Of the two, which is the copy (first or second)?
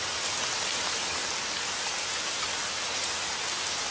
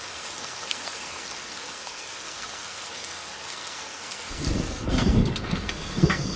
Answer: second